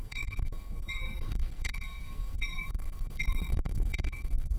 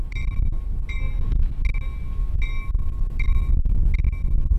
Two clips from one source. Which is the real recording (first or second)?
second